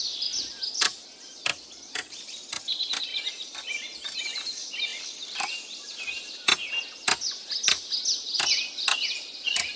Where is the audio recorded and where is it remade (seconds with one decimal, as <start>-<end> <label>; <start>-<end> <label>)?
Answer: 0.0-9.8 recorded